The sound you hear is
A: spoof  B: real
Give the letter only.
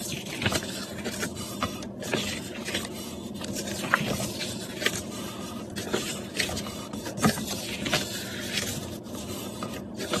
B